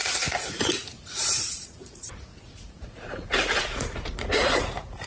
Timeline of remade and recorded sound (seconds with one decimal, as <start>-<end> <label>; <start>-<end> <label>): 0.0-5.1 remade